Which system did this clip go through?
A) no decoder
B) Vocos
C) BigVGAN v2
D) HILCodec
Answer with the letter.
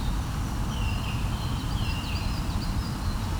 A